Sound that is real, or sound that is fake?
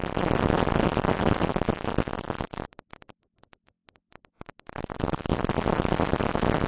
real